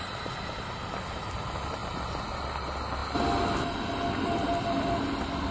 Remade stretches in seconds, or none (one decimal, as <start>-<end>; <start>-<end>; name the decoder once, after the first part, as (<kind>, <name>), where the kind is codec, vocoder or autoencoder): none